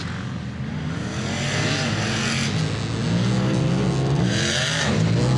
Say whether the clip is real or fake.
real